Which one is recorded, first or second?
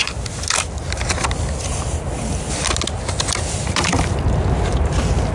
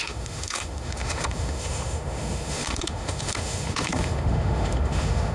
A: first